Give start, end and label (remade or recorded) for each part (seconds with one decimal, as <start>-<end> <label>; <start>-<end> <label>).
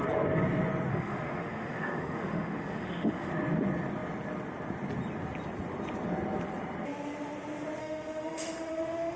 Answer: 0.0-0.9 recorded; 0.9-3.3 remade; 3.3-7.8 recorded; 7.8-9.2 remade